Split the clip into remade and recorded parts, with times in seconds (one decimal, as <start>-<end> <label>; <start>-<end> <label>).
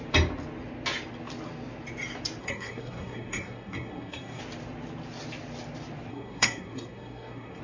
0.0-2.4 recorded; 2.4-4.4 remade; 4.4-6.1 recorded; 6.1-7.6 remade